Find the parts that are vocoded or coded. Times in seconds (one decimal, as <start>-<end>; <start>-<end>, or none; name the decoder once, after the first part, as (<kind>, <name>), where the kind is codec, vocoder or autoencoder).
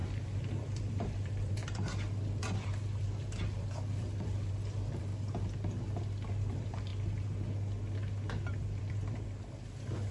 0.0-5.1 (vocoder, BigVGAN v2); 6.4-6.9; 8.6-10.1